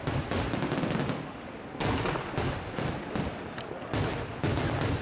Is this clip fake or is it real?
real